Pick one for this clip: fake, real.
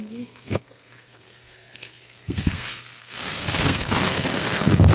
fake